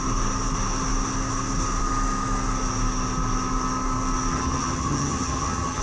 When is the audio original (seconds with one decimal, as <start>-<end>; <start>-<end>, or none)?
0.0-4.3